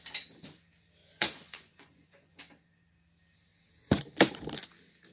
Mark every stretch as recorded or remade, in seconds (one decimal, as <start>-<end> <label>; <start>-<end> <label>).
0.0-1.0 recorded; 1.0-2.4 remade; 2.4-5.1 recorded